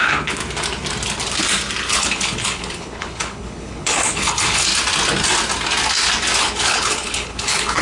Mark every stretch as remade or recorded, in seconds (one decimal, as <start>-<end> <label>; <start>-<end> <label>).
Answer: 0.0-0.4 remade; 0.4-1.9 recorded; 1.9-4.7 remade; 4.7-6.4 recorded; 6.4-7.8 remade